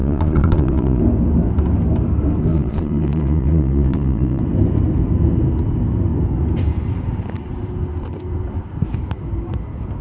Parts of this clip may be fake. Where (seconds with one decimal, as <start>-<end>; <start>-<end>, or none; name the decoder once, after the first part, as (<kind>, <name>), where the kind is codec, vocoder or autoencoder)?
0.0-1.0 (vocoder, Vocos); 2.5-4.4